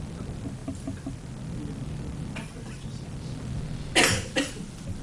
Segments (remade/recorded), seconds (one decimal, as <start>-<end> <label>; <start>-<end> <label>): 0.0-5.0 recorded